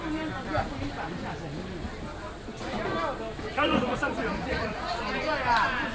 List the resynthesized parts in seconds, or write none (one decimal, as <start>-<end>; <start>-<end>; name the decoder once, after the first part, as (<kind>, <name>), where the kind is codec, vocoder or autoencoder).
3.5-5.0 (vocoder, Vocos)